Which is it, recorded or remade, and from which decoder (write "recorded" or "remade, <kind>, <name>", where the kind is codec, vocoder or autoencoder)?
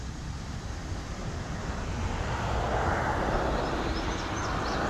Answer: recorded